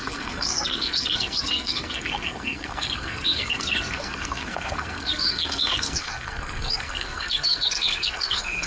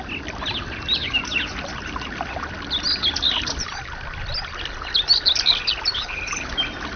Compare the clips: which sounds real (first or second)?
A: second